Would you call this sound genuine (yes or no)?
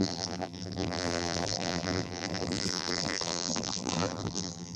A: no